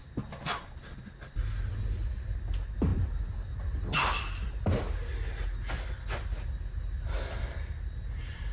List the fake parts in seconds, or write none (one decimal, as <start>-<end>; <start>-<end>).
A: none